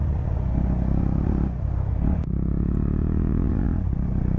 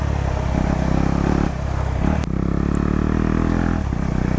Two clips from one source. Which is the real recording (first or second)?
second